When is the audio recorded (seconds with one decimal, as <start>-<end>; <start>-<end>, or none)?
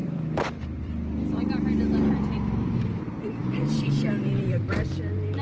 1.4-3.4; 4.9-5.4